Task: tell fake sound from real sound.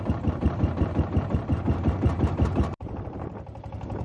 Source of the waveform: fake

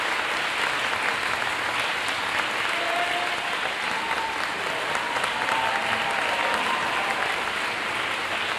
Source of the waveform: real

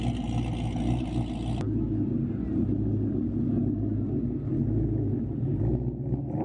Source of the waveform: real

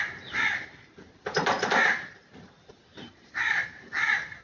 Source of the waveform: fake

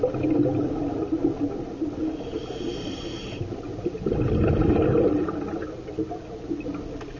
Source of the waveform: real